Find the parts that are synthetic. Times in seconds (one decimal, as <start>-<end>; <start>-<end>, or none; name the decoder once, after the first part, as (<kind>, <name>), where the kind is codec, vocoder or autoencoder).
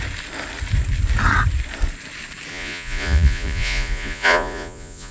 2.5-5.1 (vocoder, Vocos)